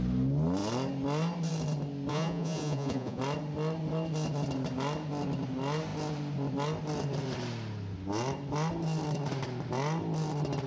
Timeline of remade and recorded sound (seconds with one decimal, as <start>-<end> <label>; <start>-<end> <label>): 0.0-2.1 recorded; 2.1-3.2 remade; 3.2-10.7 recorded